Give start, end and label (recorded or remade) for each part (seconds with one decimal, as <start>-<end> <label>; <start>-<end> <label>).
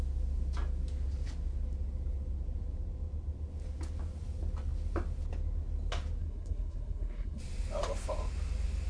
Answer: 0.0-6.2 recorded; 6.2-7.4 remade; 7.4-8.9 recorded